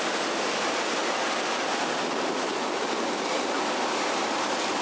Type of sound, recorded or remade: remade